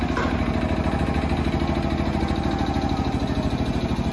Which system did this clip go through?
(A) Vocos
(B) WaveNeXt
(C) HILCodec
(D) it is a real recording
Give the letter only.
D